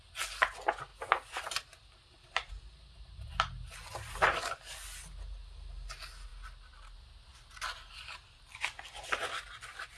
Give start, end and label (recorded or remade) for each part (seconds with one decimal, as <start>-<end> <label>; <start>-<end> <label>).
0.0-10.0 recorded